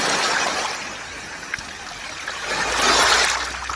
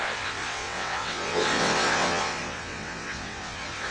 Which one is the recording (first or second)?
first